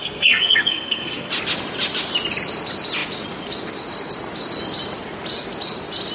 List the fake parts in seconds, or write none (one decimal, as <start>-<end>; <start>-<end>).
0.0-1.3